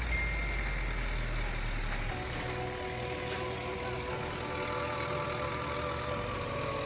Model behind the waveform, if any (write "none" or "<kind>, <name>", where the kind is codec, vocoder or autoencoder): none